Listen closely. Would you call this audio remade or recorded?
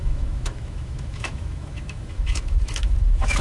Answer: remade